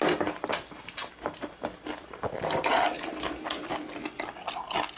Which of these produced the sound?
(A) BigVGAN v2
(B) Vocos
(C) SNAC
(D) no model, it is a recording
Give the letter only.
D